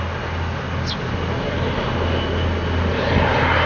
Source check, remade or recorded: recorded